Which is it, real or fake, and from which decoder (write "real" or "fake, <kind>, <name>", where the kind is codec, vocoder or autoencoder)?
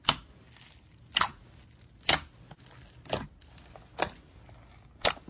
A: real